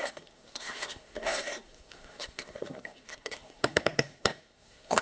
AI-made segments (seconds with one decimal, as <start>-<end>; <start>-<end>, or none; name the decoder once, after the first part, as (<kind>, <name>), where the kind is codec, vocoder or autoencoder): 0.0-5.0 (codec, SNAC)